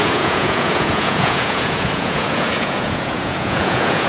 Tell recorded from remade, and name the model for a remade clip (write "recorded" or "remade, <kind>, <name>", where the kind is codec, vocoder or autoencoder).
remade, vocoder, Vocos